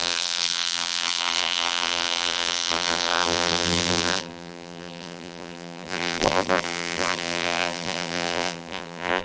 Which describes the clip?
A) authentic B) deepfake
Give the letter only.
B